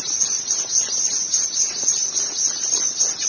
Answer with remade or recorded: remade